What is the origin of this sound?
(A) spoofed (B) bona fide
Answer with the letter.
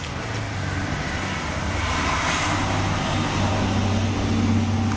B